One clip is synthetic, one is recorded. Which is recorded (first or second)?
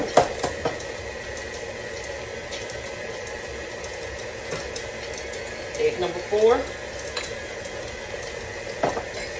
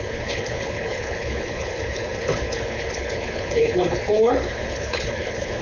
first